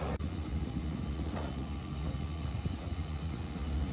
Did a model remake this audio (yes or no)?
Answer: yes